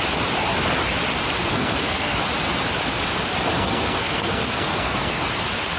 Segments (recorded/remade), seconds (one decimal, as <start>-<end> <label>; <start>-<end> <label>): 0.0-1.4 recorded; 1.4-2.2 remade; 2.2-3.5 recorded; 3.5-5.2 remade; 5.2-5.8 recorded